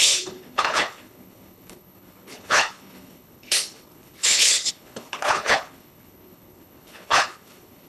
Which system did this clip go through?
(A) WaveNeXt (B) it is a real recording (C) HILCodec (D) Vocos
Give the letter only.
C